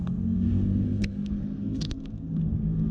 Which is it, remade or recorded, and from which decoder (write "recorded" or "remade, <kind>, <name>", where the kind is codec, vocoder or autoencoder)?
remade, codec, SNAC